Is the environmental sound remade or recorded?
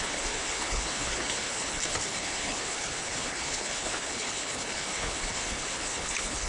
remade